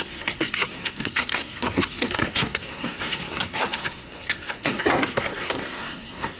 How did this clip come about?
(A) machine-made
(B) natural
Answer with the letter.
A